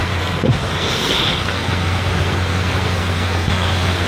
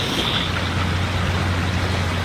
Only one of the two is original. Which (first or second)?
second